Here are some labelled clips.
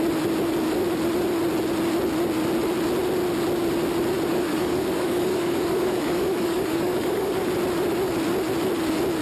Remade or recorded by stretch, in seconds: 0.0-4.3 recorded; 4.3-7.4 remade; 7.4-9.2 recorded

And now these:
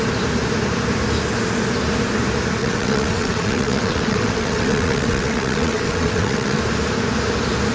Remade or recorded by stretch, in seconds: 0.0-2.6 recorded; 2.6-6.6 remade; 6.6-7.7 recorded

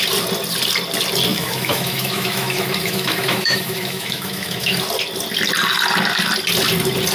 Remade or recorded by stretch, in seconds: 0.0-1.3 recorded; 1.3-4.8 remade; 4.8-7.1 recorded

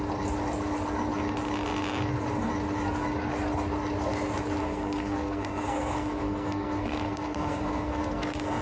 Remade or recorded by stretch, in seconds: 0.0-4.6 recorded; 4.6-8.6 remade